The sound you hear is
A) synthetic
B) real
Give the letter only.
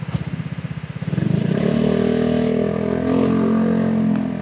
B